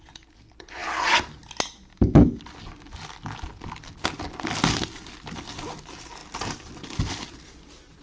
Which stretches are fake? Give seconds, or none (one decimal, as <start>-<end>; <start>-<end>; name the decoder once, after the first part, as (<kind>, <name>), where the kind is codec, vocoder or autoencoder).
1.9-2.4 (autoencoder, DAC-VAE)